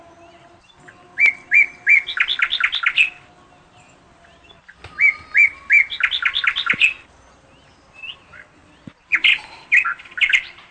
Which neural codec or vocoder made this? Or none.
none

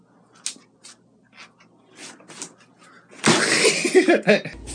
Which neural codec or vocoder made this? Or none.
none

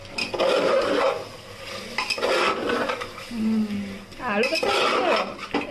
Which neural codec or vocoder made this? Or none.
none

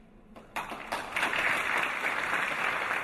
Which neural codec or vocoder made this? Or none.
none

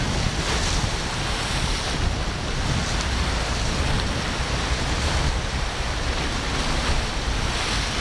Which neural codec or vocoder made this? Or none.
none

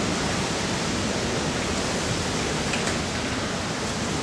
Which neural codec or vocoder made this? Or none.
none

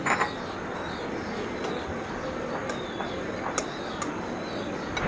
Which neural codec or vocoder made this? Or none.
none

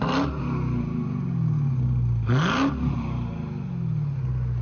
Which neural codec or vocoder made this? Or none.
none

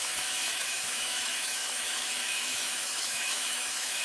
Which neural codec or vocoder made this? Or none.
autoencoder, DAC-VAE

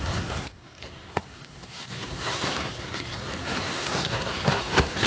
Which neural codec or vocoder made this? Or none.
codec, SNAC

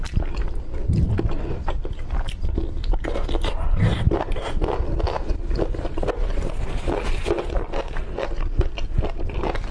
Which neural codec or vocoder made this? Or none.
none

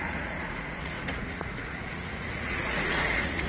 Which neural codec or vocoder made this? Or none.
vocoder, Vocos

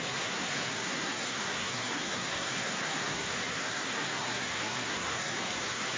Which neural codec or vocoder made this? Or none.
codec, SNAC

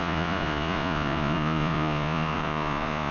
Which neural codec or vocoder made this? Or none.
vocoder, Vocos